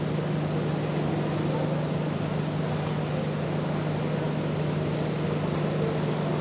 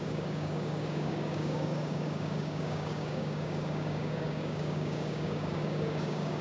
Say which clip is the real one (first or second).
first